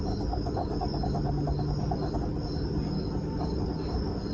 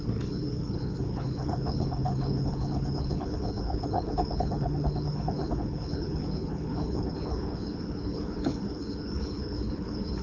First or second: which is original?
first